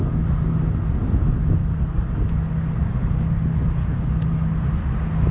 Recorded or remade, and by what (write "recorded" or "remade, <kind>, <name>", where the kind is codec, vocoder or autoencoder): recorded